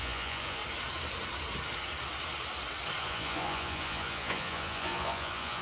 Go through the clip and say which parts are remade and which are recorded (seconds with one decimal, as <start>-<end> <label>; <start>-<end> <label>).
0.0-0.6 remade; 0.6-3.0 recorded; 3.0-5.6 remade